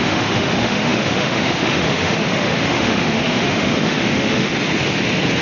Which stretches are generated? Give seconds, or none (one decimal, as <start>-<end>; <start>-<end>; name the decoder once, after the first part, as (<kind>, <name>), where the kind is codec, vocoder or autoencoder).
0.0-4.5 (autoencoder, DAC-VAE)